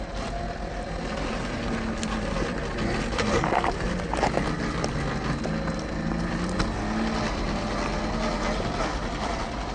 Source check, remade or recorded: recorded